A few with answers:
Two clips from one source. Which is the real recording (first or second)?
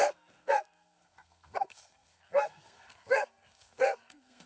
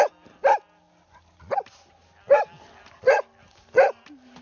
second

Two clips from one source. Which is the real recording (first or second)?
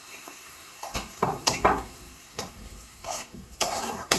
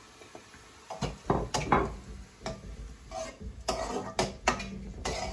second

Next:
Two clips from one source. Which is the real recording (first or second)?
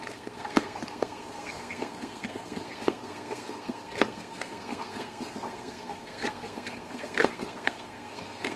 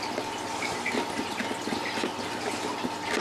second